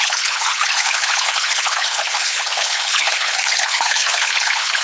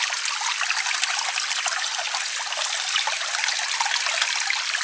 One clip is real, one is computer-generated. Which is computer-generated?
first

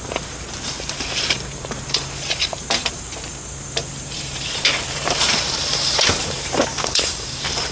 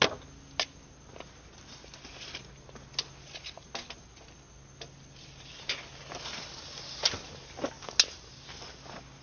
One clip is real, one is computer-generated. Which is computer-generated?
first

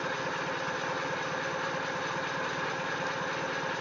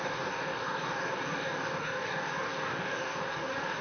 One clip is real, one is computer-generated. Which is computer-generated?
second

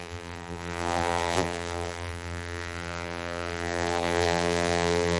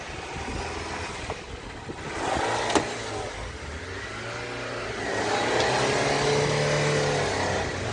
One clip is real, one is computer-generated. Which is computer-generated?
first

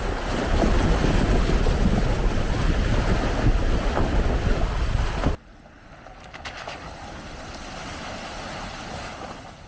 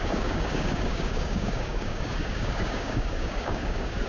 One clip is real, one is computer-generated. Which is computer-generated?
second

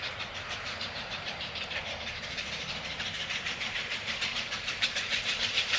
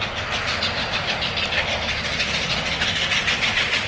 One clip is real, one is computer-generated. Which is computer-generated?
first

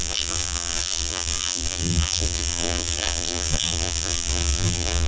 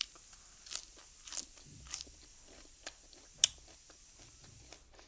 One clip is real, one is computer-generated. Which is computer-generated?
first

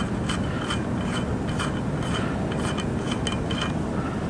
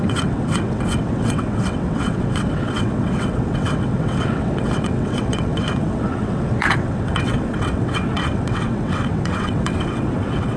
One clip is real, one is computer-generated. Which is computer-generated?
second